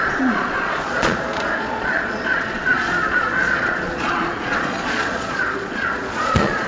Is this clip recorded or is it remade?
remade